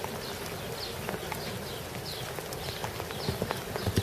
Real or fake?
real